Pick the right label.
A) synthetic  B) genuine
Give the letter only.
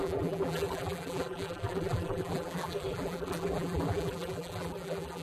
A